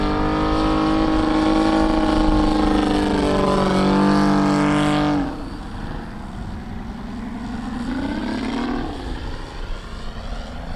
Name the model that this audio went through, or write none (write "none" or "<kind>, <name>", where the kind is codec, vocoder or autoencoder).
none